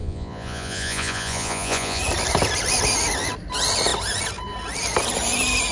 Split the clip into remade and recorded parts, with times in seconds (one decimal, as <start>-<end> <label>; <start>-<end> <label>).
0.0-2.0 remade; 2.0-5.7 recorded